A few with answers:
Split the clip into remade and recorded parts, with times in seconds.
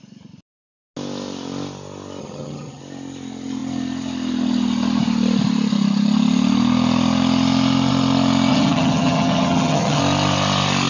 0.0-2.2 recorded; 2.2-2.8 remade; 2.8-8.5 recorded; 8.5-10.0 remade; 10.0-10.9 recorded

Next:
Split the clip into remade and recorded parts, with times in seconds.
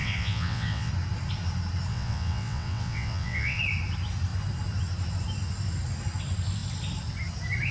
0.0-0.9 remade; 0.9-1.9 recorded; 1.9-3.6 remade; 3.6-7.7 recorded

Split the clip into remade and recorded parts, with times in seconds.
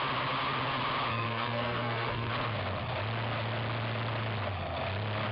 0.0-1.1 recorded; 1.1-2.3 remade; 2.3-5.3 recorded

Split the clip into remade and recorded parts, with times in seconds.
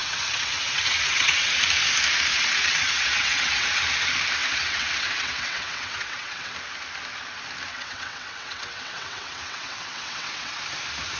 0.0-1.5 remade; 1.5-2.3 recorded; 2.3-3.8 remade; 3.8-4.4 recorded; 4.4-6.5 remade; 6.5-7.7 recorded; 7.7-10.6 remade; 10.6-11.2 recorded